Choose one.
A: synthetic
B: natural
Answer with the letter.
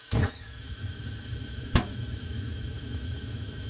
A